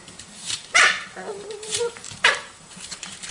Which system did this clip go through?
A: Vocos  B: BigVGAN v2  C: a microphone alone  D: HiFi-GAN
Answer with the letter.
B